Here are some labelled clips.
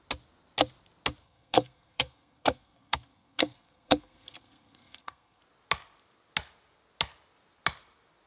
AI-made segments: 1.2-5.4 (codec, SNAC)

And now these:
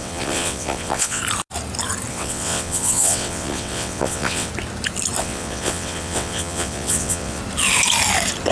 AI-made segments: 0.0-1.2 (vocoder, WaveNeXt); 2.1-4.5; 5.2-7.4

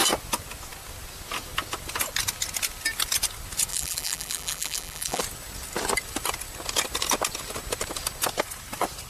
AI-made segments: 3.7-5.2 (vocoder, BigVGAN v2)